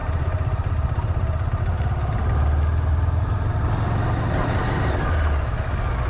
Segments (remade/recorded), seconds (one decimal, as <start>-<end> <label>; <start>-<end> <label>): 0.0-1.6 remade; 1.6-6.1 recorded